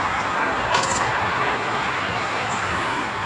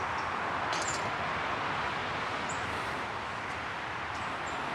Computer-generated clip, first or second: first